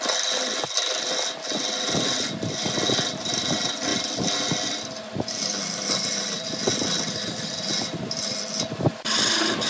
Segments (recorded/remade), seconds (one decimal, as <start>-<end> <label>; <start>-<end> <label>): 0.0-9.7 recorded